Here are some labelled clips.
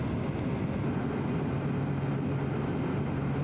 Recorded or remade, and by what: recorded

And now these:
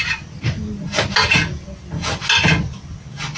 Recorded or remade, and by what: recorded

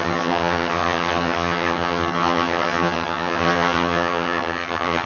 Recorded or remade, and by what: remade, vocoder, HiFi-GAN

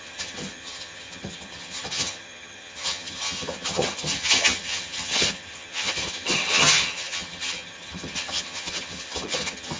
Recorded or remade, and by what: remade, vocoder, HiFi-GAN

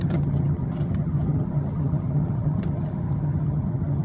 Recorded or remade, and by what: remade, vocoder, HiFi-GAN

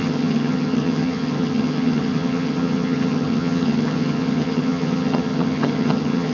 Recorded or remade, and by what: remade, vocoder, HiFi-GAN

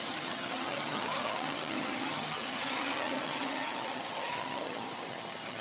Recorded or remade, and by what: remade, vocoder, HiFi-GAN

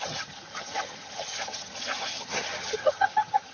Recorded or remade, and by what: remade, vocoder, HiFi-GAN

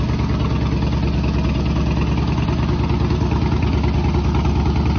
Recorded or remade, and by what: recorded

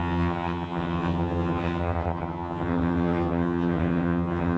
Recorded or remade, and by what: remade, vocoder, HiFi-GAN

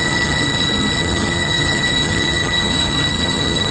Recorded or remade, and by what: remade, vocoder, HiFi-GAN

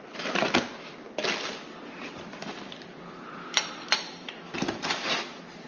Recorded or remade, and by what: recorded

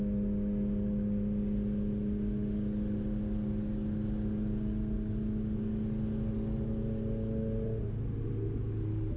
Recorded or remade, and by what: recorded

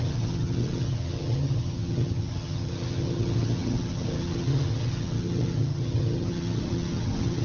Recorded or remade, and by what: remade, vocoder, HiFi-GAN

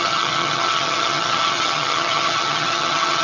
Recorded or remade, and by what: remade, vocoder, HiFi-GAN